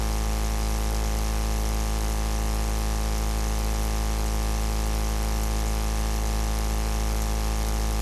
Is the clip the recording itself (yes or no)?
yes